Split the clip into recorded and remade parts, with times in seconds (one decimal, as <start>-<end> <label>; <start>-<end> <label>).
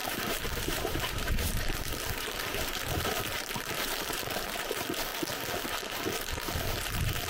0.0-5.1 remade; 5.1-6.6 recorded; 6.6-7.3 remade